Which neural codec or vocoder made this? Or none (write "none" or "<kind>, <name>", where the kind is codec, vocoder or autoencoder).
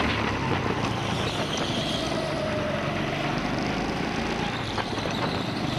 none